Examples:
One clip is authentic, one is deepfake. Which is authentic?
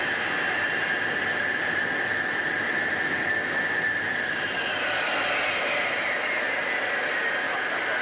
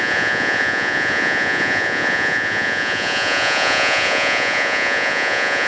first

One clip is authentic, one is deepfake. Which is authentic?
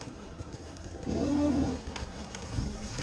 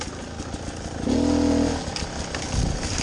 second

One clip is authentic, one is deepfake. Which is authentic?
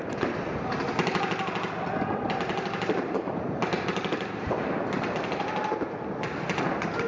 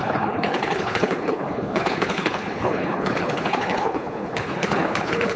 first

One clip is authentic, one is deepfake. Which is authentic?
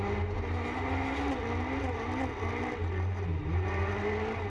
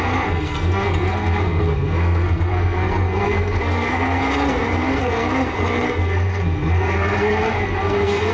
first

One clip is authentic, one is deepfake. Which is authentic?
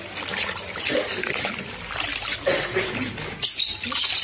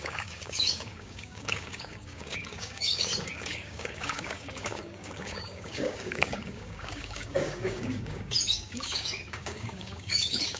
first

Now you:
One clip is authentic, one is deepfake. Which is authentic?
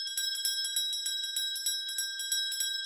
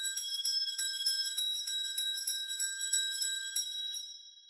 first